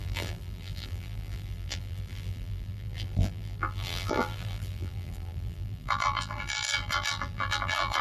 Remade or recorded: remade